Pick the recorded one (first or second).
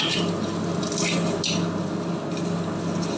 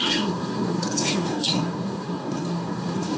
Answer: first